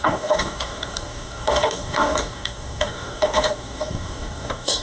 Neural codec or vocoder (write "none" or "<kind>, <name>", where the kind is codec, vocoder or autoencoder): codec, DAC